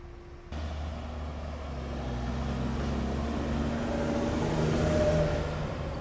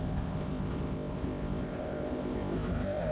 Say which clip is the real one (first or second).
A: first